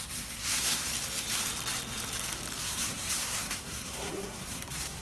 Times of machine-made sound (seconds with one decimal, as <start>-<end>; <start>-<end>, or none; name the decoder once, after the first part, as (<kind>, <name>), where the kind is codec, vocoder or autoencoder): 0.0-0.9 (codec, SNAC); 2.6-5.0